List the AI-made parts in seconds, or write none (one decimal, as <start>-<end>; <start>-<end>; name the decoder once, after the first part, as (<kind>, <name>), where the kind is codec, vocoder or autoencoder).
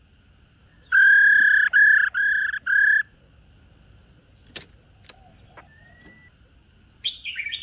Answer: none